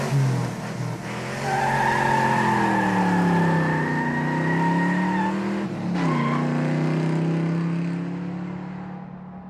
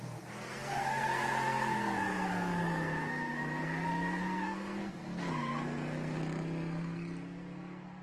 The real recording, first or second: first